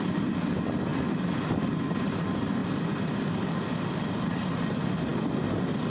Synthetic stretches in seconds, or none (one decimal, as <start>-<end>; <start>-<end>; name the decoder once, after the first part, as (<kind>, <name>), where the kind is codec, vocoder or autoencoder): none